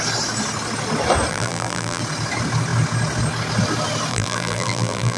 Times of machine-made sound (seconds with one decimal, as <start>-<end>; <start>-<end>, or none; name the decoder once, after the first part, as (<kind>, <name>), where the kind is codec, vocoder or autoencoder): 1.3-2.0 (vocoder, BigVGAN v2); 4.1-5.2